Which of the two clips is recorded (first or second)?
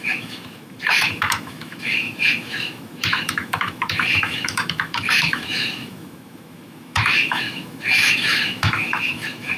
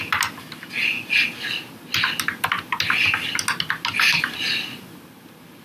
second